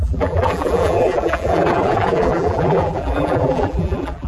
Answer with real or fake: fake